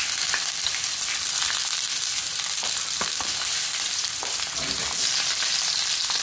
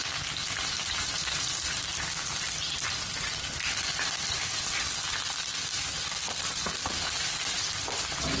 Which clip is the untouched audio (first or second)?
second